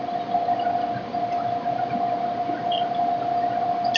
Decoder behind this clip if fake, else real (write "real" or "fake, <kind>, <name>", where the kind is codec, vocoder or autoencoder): real